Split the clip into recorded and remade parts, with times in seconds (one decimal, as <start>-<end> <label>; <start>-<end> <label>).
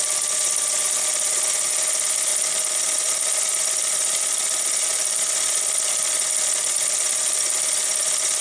0.0-2.3 recorded; 2.3-5.9 remade; 5.9-8.4 recorded